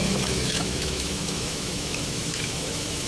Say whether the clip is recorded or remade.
remade